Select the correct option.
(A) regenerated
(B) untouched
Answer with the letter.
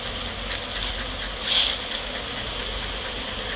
B